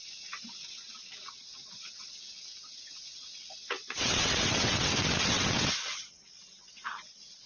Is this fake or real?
fake